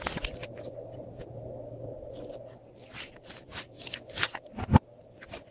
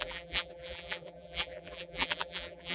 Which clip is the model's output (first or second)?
second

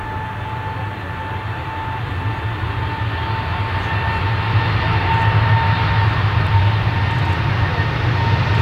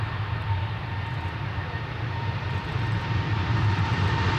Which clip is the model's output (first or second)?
second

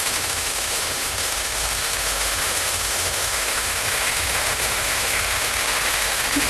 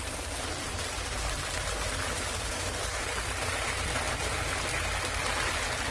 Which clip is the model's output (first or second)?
first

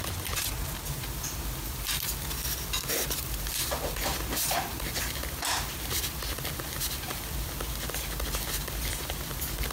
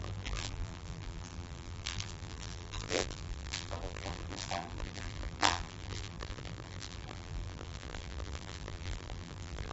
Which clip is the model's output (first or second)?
second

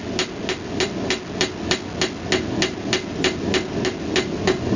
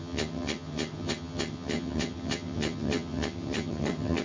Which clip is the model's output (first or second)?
second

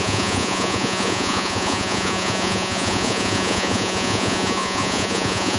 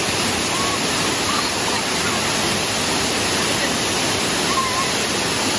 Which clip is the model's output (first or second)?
first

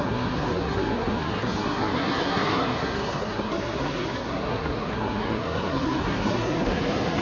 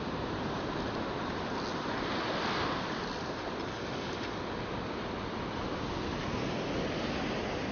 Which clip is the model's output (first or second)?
first